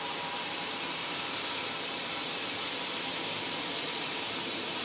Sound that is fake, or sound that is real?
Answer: fake